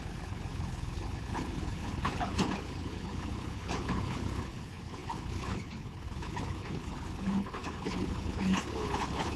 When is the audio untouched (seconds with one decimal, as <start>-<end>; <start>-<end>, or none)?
none